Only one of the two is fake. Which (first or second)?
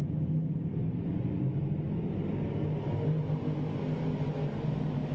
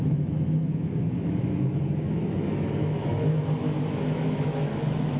second